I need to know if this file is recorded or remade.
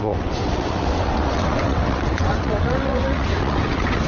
remade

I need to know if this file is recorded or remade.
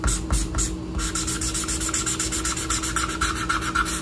recorded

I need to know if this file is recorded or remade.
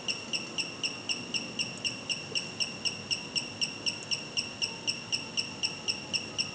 recorded